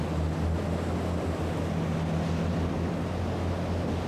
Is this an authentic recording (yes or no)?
yes